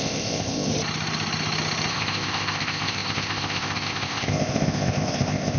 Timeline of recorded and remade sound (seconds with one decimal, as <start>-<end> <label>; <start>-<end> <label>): 0.0-0.7 remade; 0.7-1.9 recorded; 1.9-5.6 remade